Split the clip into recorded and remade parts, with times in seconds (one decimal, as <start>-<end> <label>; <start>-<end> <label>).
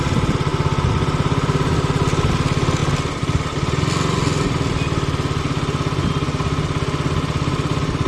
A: 0.0-8.1 recorded